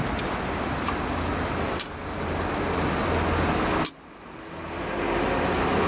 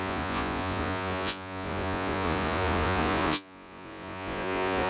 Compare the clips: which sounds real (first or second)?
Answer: first